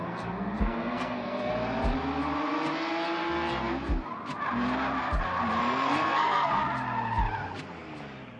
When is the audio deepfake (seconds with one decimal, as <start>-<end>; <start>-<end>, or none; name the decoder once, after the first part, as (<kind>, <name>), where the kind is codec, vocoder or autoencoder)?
0.0-1.5 (codec, SNAC); 5.6-6.6